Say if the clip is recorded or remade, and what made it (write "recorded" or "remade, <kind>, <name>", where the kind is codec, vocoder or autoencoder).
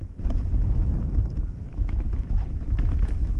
remade, autoencoder, DAC-VAE